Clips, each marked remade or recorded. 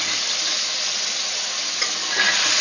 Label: recorded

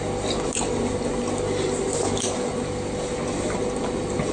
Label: recorded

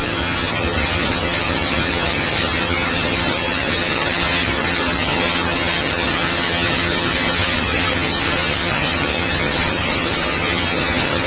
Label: remade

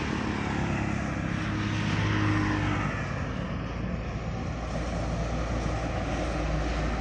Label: recorded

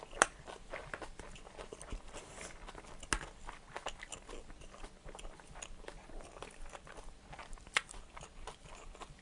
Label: recorded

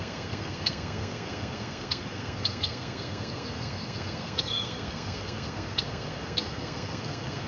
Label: remade